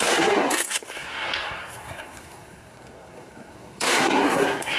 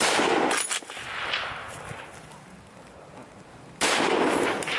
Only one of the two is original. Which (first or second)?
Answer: second